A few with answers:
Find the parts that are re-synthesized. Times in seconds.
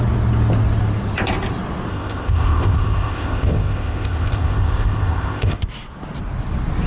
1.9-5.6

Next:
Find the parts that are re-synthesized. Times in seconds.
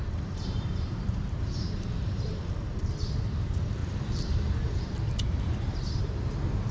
0.0-6.7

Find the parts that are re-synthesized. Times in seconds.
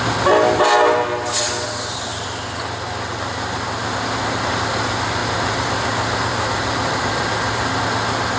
2.1-2.6; 5.2-7.8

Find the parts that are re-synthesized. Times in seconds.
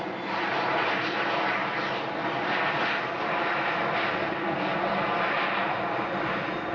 none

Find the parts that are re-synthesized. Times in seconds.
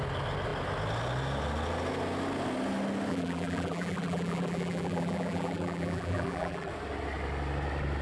3.1-6.7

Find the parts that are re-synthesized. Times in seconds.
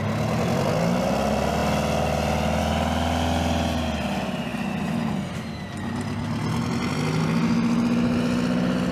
none